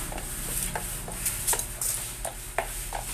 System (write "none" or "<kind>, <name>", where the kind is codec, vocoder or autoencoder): none